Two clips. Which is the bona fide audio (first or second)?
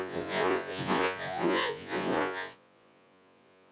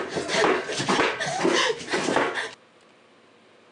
second